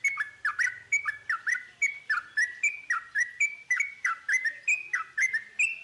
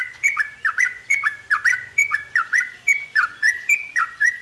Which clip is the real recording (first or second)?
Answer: first